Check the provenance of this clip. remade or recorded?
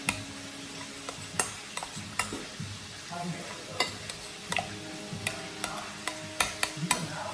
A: recorded